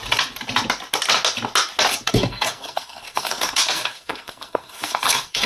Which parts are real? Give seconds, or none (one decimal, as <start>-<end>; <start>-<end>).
0.0-1.9